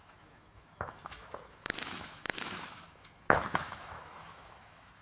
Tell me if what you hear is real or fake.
fake